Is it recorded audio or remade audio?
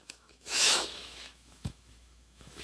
remade